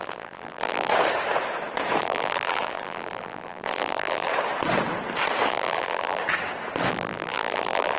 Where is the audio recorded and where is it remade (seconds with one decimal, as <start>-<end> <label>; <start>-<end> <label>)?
0.0-0.9 remade; 0.9-2.0 recorded; 2.0-4.3 remade; 4.3-5.5 recorded; 5.5-6.2 remade; 6.2-6.9 recorded; 6.9-8.0 remade